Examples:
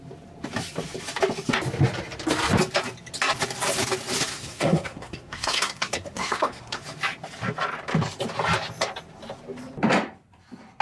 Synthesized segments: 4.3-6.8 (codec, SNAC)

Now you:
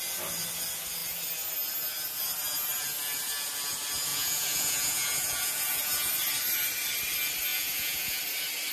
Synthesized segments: 4.1-6.1 (vocoder, Vocos); 7.5-8.2

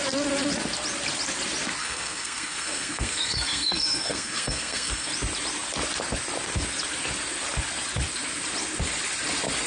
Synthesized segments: 1.8-5.1 (codec, SNAC)

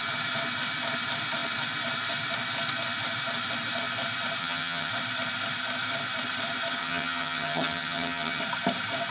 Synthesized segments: 4.4-4.9 (vocoder, HiFi-GAN); 6.8-8.4